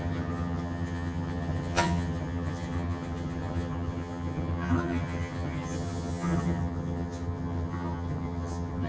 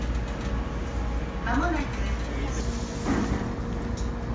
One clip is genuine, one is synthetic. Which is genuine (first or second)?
second